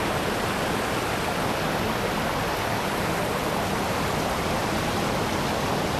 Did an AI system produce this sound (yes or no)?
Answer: no